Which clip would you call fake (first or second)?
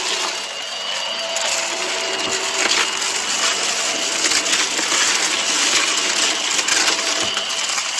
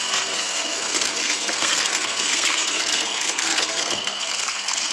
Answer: second